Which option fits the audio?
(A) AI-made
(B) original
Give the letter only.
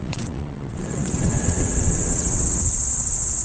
A